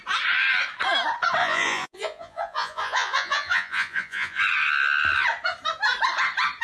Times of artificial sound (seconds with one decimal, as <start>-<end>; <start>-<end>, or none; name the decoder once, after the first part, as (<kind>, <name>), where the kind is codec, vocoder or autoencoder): 1.4-4.4 (vocoder, Vocos)